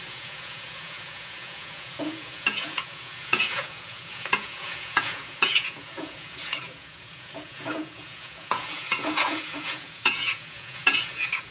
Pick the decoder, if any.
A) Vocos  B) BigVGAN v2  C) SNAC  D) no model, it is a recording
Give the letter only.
A